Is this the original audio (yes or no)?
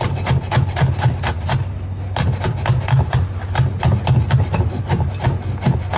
yes